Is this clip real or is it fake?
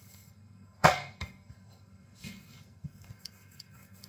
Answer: fake